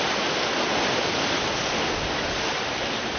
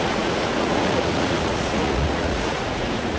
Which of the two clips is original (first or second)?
first